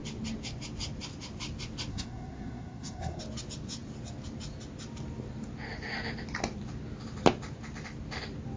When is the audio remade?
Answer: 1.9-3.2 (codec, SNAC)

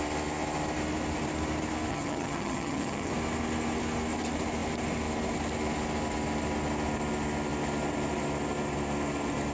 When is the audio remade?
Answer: 1.9-3.1 (vocoder, HiFi-GAN)

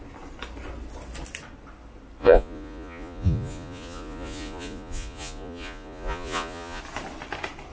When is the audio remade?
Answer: 2.2-6.8 (vocoder, Vocos)